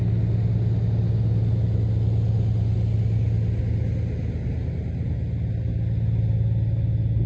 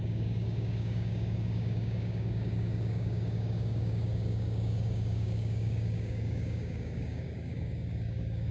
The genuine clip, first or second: first